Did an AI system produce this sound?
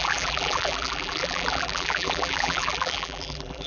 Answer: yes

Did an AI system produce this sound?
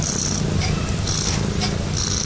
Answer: no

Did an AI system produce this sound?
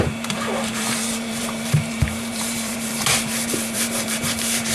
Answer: yes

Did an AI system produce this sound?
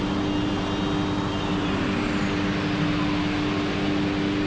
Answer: no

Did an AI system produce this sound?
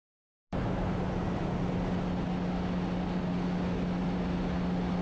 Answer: no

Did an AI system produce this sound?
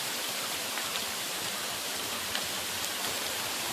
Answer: yes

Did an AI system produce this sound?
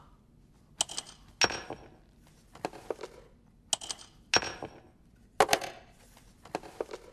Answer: no